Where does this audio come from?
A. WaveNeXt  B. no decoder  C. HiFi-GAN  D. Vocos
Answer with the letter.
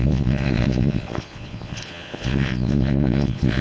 D